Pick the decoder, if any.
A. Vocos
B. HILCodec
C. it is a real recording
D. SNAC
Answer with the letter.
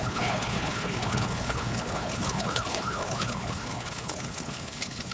B